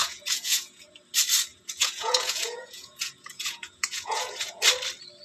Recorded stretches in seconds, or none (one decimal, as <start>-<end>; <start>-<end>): 0.8-1.5; 4.6-5.2

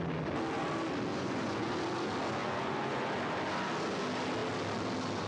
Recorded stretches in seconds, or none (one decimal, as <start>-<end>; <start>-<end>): 0.0-1.1; 1.7-2.4; 3.1-5.3

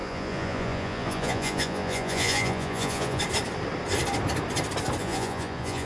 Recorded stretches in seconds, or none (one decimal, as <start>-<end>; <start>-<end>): 3.2-5.0

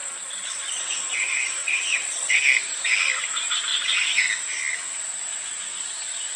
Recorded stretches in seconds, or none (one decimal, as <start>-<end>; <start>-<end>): 0.8-1.6; 2.3-6.4